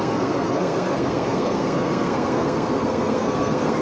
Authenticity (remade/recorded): remade